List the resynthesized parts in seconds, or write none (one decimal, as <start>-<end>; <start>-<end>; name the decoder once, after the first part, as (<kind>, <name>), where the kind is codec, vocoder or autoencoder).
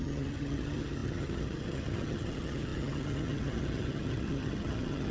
0.0-5.1 (vocoder, HiFi-GAN)